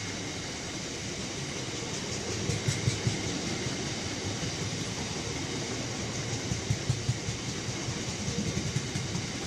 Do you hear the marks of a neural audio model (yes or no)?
no